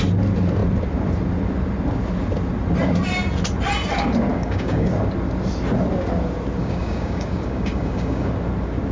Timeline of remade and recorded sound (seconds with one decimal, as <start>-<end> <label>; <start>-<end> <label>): 0.0-4.3 recorded; 4.3-4.9 remade; 4.9-6.6 recorded; 6.6-8.3 remade; 8.3-8.9 recorded